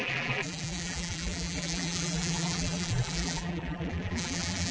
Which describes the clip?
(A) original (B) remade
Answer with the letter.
B